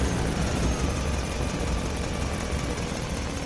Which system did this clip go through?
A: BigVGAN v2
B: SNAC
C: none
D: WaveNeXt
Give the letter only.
C